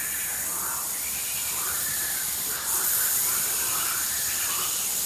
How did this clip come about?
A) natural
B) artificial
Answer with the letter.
B